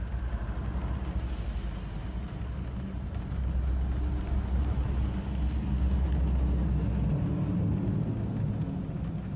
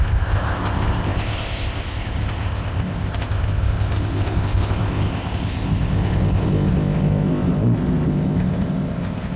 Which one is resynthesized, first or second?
second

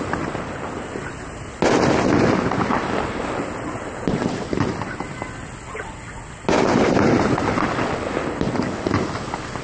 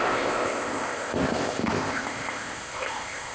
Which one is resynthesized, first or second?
second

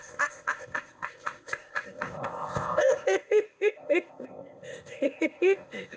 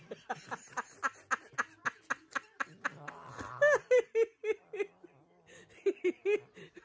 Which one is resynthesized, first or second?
first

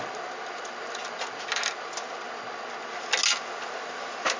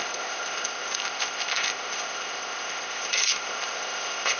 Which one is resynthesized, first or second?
second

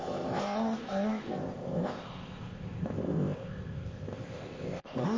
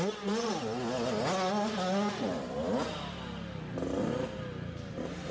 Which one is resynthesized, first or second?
first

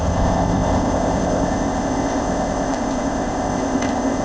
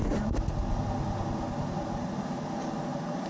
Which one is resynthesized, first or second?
first